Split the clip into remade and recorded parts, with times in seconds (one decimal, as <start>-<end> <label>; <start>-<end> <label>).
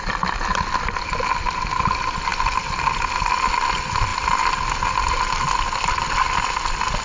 0.0-7.0 recorded